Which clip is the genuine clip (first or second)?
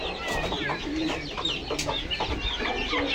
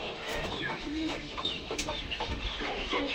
first